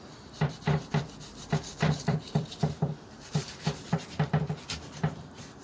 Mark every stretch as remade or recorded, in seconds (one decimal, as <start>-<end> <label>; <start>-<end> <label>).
0.0-1.3 recorded; 1.3-4.7 remade; 4.7-5.6 recorded